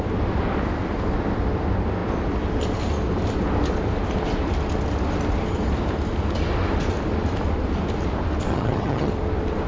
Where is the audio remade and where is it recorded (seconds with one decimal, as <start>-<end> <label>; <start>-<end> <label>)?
0.0-8.5 recorded; 8.5-9.1 remade; 9.1-9.7 recorded